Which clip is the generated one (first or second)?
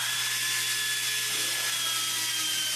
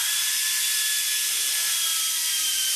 second